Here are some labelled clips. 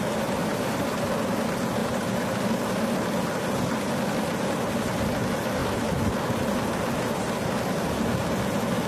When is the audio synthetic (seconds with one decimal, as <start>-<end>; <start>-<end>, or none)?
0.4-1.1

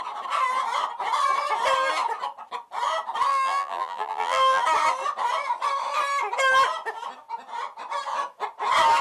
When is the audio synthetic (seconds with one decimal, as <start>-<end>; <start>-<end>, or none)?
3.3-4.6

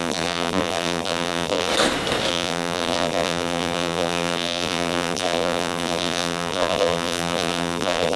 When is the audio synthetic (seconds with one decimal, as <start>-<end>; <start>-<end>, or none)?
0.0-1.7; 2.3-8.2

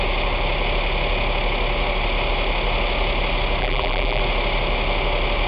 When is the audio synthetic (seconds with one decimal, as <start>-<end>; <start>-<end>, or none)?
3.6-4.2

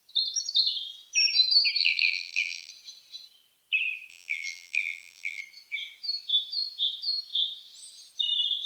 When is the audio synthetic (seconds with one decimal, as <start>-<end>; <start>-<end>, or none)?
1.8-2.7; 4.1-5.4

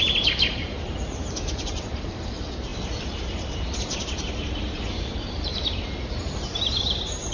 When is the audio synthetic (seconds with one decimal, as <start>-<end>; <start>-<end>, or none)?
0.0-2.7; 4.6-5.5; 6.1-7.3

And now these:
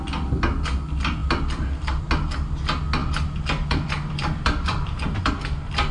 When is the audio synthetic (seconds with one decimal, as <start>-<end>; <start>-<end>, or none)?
3.0-5.3

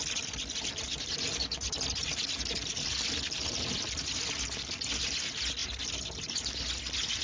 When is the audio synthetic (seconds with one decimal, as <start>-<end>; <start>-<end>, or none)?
0.9-4.2